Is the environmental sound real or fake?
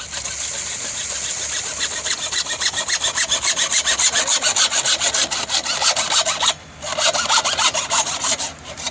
real